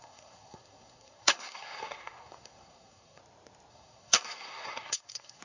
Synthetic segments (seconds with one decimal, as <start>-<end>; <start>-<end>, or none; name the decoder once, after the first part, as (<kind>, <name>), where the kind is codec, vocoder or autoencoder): 0.0-3.2 (codec, SNAC); 3.7-5.4